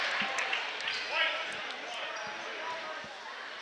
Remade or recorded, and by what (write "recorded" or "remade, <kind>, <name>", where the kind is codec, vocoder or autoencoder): recorded